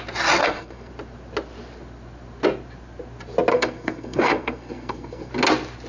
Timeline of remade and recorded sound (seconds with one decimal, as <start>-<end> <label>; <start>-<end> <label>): 0.0-0.4 recorded; 0.4-0.9 remade; 0.9-3.5 recorded; 3.5-5.3 remade; 5.3-5.9 recorded